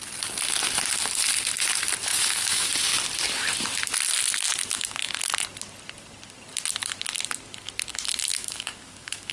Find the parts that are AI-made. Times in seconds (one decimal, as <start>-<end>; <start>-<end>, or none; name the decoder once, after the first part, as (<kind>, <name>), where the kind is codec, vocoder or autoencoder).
2.1-2.7 (autoencoder, DAC-VAE); 4.6-5.1; 8.3-9.3